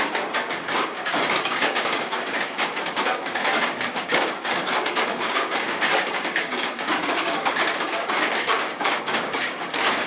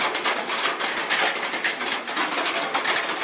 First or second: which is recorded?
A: second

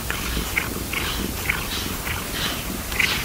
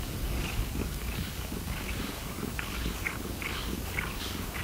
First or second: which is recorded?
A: first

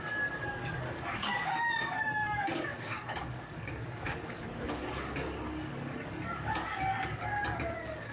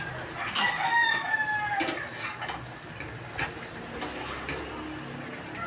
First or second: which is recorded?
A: second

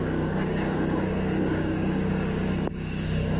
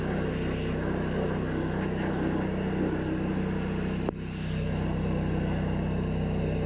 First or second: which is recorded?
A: second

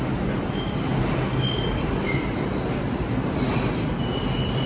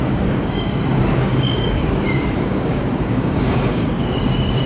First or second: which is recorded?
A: first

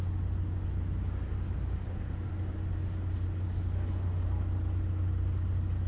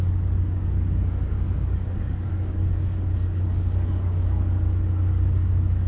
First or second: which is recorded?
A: first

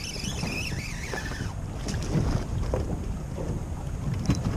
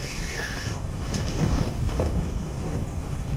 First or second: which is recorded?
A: first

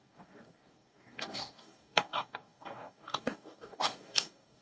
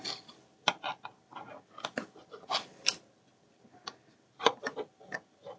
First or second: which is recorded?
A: second